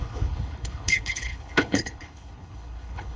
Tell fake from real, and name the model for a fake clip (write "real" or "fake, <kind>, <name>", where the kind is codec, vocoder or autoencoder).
fake, codec, HILCodec